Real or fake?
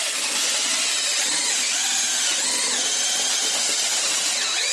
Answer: real